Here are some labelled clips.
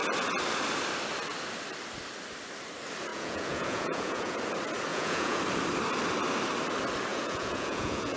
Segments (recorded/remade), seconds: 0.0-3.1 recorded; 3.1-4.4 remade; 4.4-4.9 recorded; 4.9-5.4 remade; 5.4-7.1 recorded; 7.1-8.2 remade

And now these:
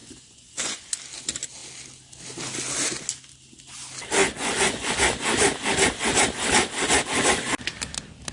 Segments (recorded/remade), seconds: 0.0-0.9 remade; 0.9-4.2 recorded; 4.2-4.9 remade; 4.9-8.3 recorded

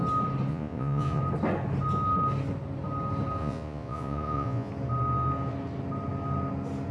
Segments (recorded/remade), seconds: 0.0-0.5 recorded; 0.5-1.2 remade; 1.2-3.4 recorded; 3.4-4.7 remade; 4.7-6.9 recorded

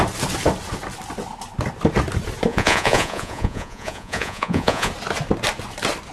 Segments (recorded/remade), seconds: 0.0-2.5 recorded; 2.5-4.9 remade; 4.9-6.1 recorded

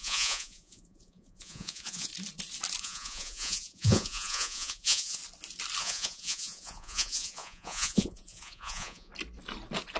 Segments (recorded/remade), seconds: 0.0-2.1 remade; 2.1-2.8 recorded; 2.8-5.2 remade; 5.2-5.8 recorded; 5.8-9.1 remade; 9.1-10.0 recorded